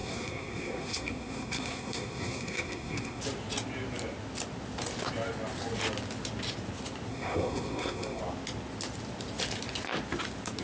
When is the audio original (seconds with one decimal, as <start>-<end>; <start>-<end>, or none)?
3.2-7.1; 8.2-10.6